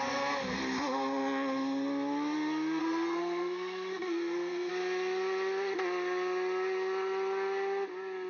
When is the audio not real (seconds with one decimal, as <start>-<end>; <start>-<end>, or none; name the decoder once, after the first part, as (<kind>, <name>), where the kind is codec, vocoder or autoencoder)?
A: 2.8-4.7 (codec, SNAC)